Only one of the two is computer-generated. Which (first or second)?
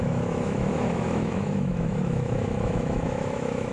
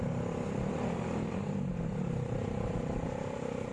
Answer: first